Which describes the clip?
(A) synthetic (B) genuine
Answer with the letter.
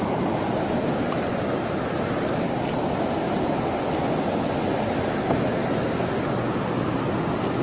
B